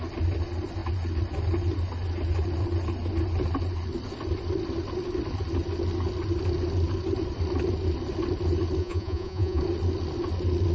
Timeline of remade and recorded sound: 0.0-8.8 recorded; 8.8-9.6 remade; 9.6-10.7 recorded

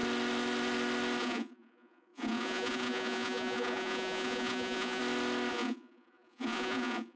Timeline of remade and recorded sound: 0.0-1.2 recorded; 1.2-5.0 remade; 5.0-5.5 recorded; 5.5-7.2 remade

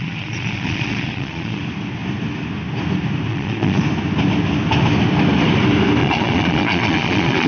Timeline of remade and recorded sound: 0.0-1.6 remade; 1.6-3.3 recorded; 3.3-3.8 remade; 3.8-6.0 recorded; 6.0-7.5 remade

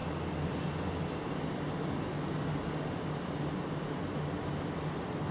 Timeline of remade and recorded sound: 0.0-5.3 recorded

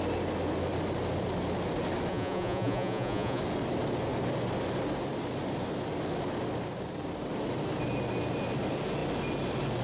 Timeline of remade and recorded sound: 0.0-2.1 recorded; 2.1-3.4 remade; 3.4-9.8 recorded